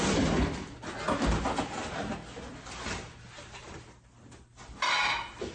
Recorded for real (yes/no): yes